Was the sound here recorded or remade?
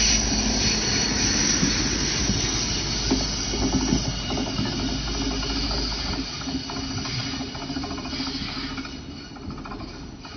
recorded